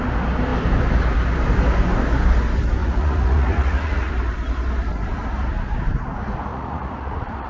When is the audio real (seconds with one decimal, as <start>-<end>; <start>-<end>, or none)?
0.0-2.8; 4.1-6.5